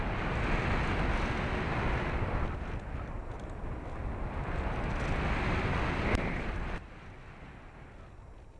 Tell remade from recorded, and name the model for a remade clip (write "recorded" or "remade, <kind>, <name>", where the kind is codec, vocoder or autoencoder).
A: recorded